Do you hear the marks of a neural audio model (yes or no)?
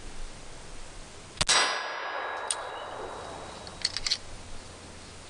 no